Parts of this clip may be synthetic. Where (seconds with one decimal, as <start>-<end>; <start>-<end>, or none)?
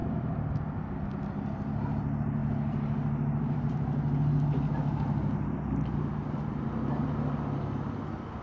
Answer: none